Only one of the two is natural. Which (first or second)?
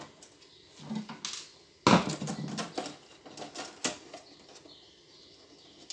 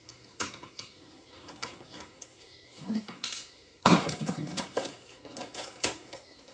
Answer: first